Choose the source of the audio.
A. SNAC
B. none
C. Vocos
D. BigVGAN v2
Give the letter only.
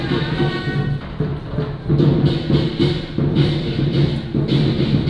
B